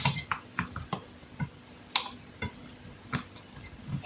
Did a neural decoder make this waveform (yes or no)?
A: no